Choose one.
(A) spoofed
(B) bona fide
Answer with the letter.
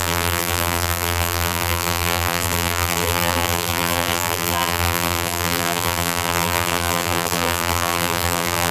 A